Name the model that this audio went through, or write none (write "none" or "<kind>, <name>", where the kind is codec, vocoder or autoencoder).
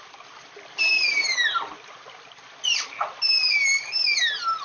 none